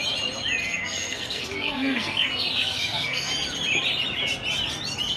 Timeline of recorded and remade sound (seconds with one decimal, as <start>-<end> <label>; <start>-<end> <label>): 0.0-0.6 recorded; 0.6-3.3 remade; 3.3-5.2 recorded